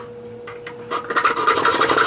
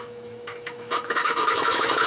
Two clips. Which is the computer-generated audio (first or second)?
second